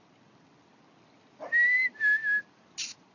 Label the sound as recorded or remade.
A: recorded